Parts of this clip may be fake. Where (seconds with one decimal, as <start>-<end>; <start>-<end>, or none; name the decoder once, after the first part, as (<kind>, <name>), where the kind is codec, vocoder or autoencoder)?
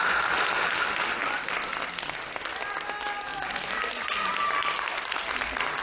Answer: 1.2-1.7 (vocoder, BigVGAN v2)